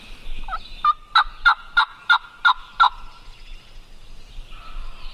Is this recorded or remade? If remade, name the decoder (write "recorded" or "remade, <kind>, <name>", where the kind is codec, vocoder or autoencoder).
recorded